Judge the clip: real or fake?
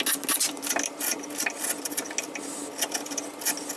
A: real